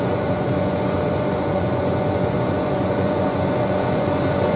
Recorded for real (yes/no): no